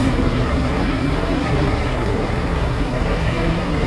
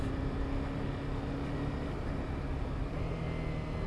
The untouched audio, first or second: second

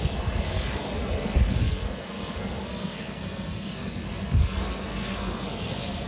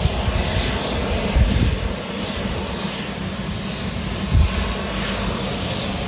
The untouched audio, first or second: second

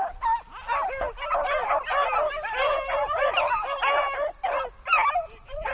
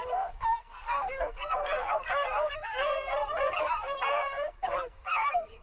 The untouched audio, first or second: first